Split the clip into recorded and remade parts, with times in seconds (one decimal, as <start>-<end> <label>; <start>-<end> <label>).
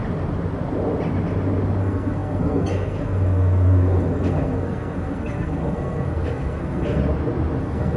0.0-1.8 recorded; 1.8-7.0 remade; 7.0-7.6 recorded; 7.6-8.0 remade